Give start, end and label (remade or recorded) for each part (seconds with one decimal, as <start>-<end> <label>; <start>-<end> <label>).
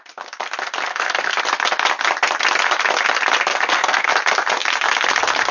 0.0-0.9 recorded; 0.9-1.4 remade; 1.4-3.5 recorded; 3.5-4.1 remade; 4.1-5.5 recorded